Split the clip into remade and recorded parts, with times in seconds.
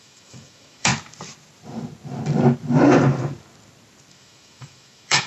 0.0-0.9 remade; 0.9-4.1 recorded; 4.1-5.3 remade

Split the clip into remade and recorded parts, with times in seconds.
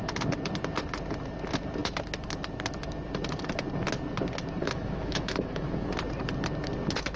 0.0-4.6 recorded; 4.6-5.9 remade; 5.9-7.2 recorded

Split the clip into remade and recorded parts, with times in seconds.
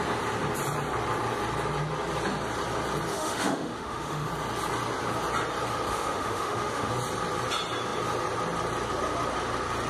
0.0-3.1 recorded; 3.1-4.3 remade; 4.3-5.9 recorded; 5.9-6.9 remade; 6.9-9.9 recorded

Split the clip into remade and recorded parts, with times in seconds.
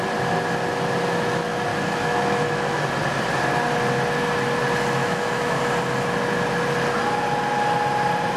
0.0-1.7 recorded; 1.7-2.8 remade; 2.8-5.0 recorded; 5.0-5.6 remade; 5.6-8.4 recorded